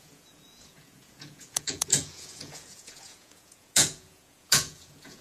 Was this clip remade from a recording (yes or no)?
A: yes